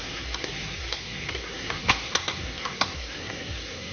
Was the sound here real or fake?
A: fake